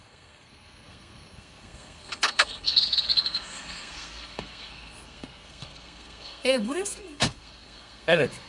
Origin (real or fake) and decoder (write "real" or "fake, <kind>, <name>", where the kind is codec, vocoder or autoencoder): fake, codec, SNAC